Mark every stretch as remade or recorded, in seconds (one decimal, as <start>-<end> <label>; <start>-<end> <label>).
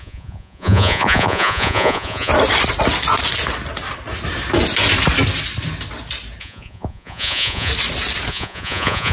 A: 0.0-2.3 remade; 2.3-6.4 recorded; 6.4-7.7 remade; 7.7-8.3 recorded; 8.3-9.1 remade